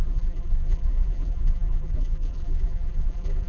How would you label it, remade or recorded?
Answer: remade